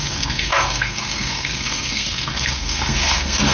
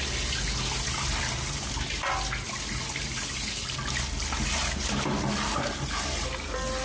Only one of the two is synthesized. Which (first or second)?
first